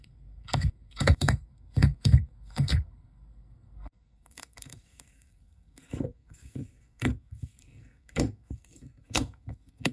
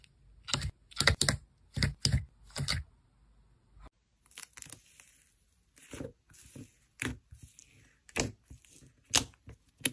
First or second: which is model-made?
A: first